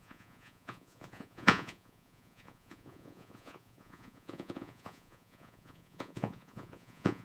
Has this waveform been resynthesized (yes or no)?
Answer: yes